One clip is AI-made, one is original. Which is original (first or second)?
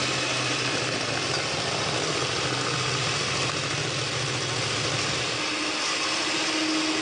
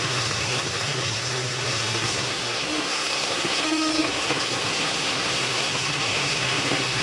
first